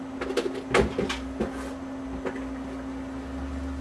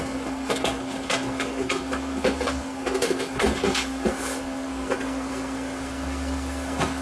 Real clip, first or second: first